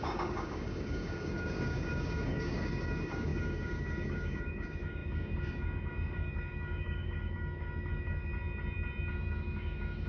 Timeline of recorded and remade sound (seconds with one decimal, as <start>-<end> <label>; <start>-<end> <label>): 0.0-8.3 remade; 8.3-9.1 recorded; 9.1-10.1 remade